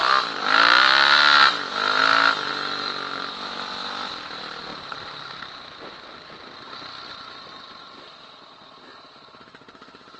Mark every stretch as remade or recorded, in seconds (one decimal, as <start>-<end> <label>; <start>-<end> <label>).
0.0-10.2 recorded